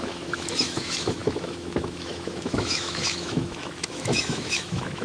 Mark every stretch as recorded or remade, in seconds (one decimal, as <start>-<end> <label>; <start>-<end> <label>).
0.0-5.0 remade